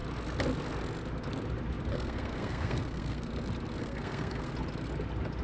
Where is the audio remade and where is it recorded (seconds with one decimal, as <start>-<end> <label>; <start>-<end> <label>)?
0.0-1.9 recorded; 1.9-3.3 remade; 3.3-3.8 recorded; 3.8-4.5 remade; 4.5-5.4 recorded